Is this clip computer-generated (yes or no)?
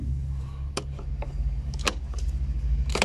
yes